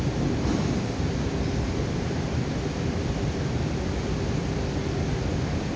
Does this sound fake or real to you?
real